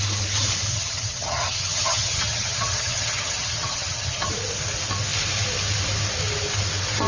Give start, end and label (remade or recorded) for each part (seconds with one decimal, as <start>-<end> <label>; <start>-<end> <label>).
0.0-0.7 recorded; 0.7-4.3 remade; 4.3-7.1 recorded